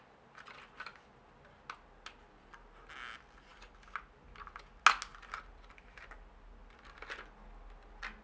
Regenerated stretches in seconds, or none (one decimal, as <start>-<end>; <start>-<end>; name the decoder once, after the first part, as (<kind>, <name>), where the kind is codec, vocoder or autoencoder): none